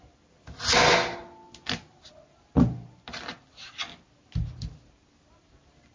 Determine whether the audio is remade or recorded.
recorded